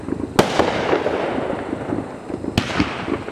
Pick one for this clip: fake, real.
real